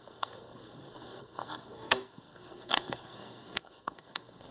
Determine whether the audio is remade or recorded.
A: remade